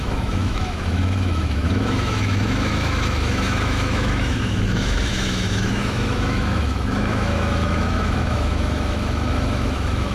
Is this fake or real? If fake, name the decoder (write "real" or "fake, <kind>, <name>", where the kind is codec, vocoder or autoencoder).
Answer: fake, autoencoder, DAC-VAE